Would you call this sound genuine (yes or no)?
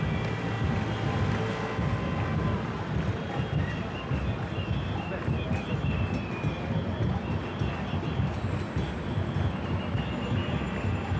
yes